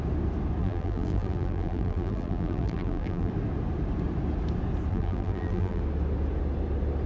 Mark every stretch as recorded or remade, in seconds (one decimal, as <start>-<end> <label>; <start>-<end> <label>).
0.0-0.6 recorded; 0.6-3.3 remade; 3.3-4.9 recorded; 4.9-5.8 remade; 5.8-7.1 recorded